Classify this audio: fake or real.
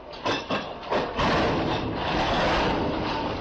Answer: real